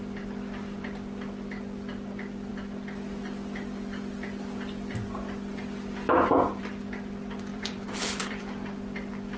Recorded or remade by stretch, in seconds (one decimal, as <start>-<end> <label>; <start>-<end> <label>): 0.0-7.5 recorded; 7.5-8.4 remade; 8.4-9.4 recorded